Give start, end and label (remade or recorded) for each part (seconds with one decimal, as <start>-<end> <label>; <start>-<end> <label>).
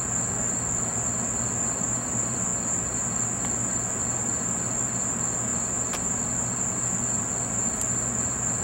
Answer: 0.0-8.6 recorded